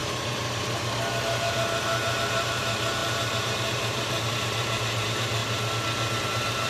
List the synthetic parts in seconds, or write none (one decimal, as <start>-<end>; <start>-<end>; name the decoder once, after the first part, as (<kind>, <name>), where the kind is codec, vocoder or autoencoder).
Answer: 0.0-5.4 (vocoder, BigVGAN v2); 6.1-6.7